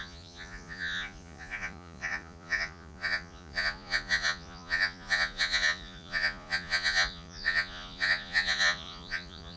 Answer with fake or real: fake